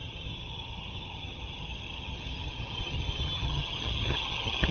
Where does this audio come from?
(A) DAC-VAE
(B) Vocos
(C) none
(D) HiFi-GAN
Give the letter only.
D